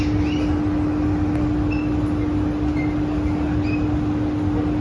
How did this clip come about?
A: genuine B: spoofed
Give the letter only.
A